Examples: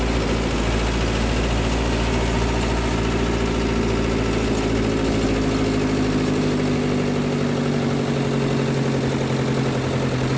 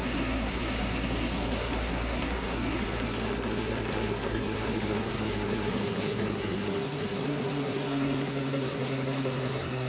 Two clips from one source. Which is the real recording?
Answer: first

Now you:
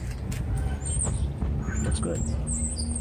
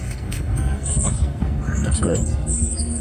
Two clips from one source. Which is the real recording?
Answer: first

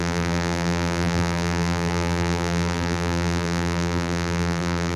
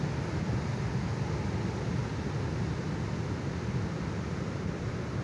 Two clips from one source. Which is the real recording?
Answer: second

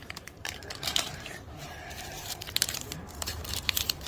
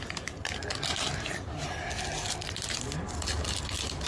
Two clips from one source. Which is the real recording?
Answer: second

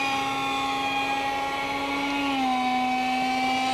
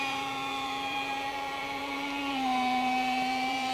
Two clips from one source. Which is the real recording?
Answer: first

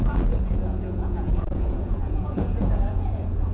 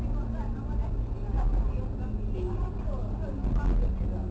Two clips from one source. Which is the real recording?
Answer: second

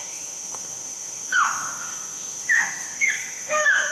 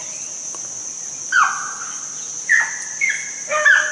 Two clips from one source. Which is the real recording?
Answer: second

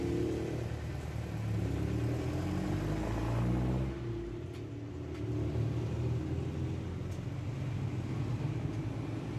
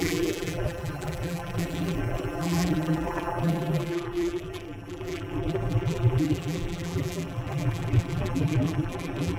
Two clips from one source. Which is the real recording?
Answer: first